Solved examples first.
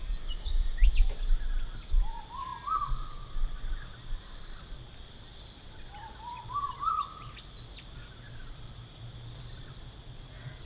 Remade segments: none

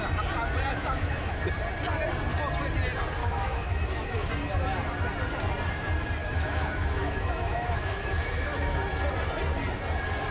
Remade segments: 0.7-1.4; 3.2-4.3; 6.2-8.8